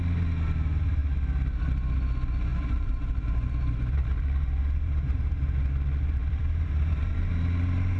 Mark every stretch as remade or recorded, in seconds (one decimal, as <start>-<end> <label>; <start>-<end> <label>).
0.0-2.5 recorded; 2.5-5.7 remade; 5.7-6.2 recorded; 6.2-7.3 remade; 7.3-8.0 recorded